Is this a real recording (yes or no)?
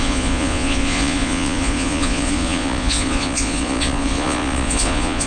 no